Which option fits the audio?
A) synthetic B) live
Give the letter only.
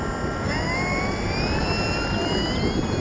B